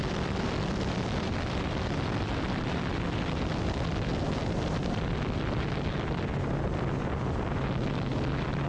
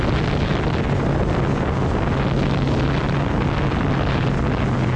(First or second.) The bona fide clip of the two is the second